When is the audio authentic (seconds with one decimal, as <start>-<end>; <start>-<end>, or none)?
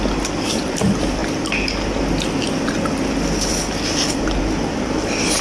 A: 0.0-5.4